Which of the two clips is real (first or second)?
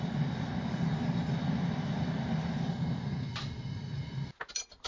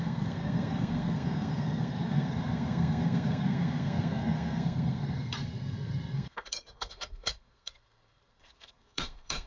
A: first